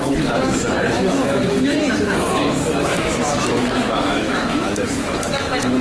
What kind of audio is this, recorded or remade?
remade